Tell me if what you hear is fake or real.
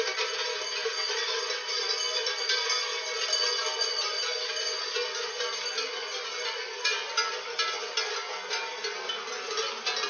real